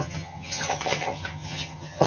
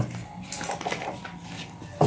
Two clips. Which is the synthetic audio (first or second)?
first